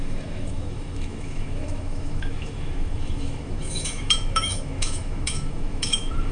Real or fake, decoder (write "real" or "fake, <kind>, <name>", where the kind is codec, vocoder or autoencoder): fake, autoencoder, DAC-VAE